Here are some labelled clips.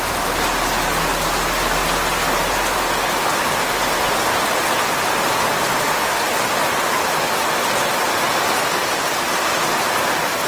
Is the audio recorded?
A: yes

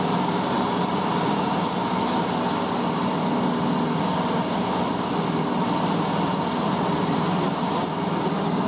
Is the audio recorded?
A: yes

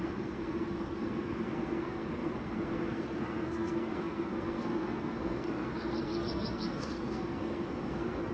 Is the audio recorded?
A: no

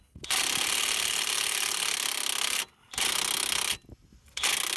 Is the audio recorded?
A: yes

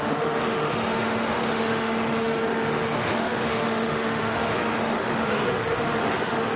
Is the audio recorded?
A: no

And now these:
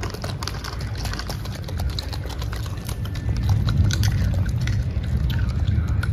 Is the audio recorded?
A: yes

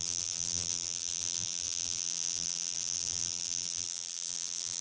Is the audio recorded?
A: no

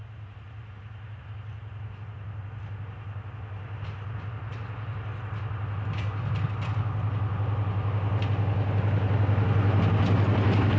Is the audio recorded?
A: yes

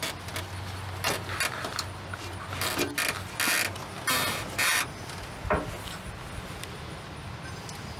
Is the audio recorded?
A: yes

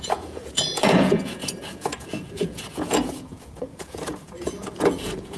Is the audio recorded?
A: no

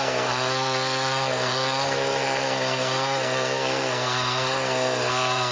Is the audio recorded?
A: no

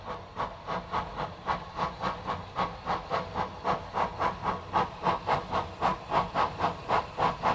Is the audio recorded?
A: yes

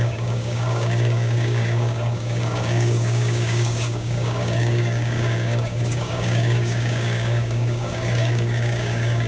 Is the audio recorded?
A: no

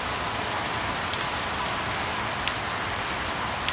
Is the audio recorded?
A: yes